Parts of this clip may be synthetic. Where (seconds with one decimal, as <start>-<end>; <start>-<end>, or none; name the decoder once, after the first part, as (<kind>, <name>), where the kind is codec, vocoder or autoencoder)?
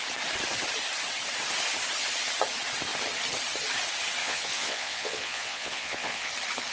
4.2-6.3 (vocoder, Vocos)